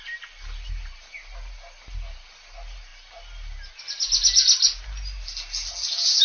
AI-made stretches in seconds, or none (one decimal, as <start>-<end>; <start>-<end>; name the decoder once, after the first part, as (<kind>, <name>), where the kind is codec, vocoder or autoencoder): none